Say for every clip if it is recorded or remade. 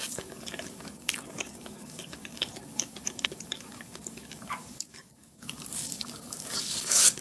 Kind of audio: remade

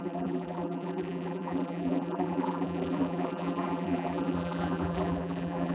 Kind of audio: remade